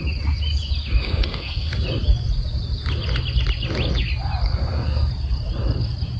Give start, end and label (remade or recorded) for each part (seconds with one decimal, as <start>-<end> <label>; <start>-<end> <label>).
0.0-1.0 recorded; 1.0-1.7 remade; 1.7-4.4 recorded; 4.4-5.1 remade; 5.1-6.2 recorded